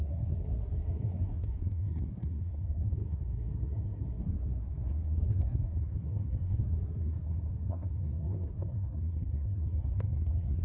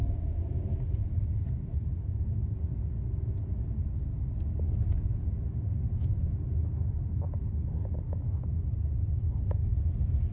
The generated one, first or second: first